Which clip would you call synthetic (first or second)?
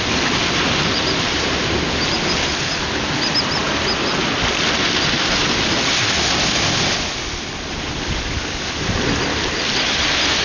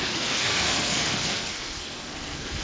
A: second